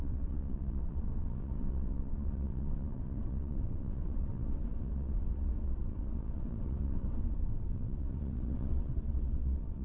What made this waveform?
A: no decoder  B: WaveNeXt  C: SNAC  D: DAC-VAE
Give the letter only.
B